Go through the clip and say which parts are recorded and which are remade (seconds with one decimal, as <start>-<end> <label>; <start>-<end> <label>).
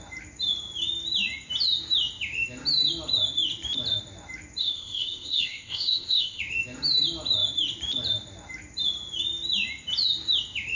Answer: 0.0-4.6 recorded; 4.6-6.4 remade; 6.4-10.8 recorded